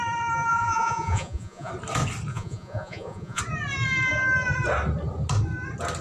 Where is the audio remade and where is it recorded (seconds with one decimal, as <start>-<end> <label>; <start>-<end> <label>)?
0.0-0.5 recorded; 0.5-1.7 remade; 1.7-2.3 recorded; 2.3-3.4 remade; 3.4-6.0 recorded